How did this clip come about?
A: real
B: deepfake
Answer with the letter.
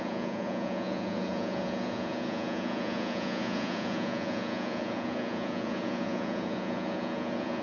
B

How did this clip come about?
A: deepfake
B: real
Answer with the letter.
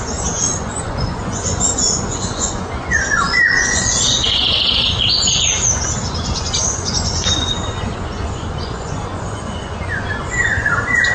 A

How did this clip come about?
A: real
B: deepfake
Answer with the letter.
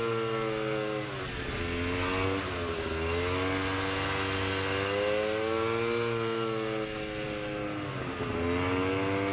A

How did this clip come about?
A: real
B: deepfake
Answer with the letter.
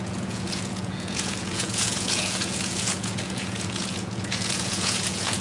B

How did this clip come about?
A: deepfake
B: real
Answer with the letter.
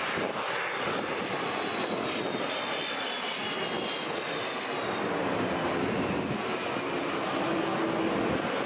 B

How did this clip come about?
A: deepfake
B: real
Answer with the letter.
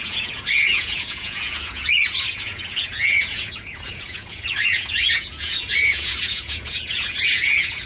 A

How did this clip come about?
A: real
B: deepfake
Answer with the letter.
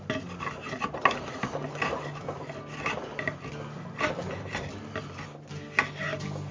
A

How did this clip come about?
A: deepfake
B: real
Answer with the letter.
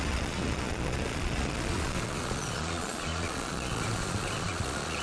A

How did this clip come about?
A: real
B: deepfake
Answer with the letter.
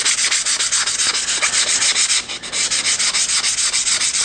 A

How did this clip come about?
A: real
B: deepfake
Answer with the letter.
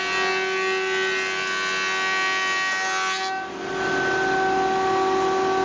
A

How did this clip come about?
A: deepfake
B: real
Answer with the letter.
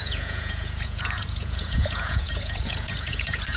A